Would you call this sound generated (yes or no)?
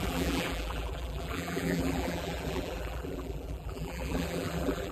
yes